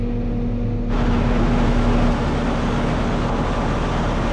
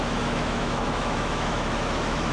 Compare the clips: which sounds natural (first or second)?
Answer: first